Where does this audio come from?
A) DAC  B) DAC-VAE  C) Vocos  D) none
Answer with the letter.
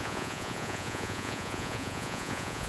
C